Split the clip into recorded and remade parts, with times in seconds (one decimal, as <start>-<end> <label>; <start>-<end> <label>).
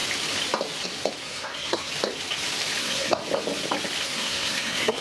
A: 0.0-1.2 recorded; 1.2-1.9 remade; 1.9-2.8 recorded; 2.8-3.2 remade; 3.2-4.0 recorded; 4.0-5.0 remade